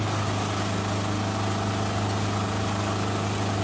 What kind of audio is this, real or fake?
real